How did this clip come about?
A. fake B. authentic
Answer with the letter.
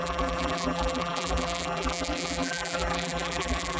A